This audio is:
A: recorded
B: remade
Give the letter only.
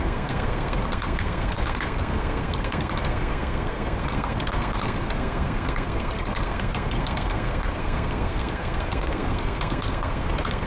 B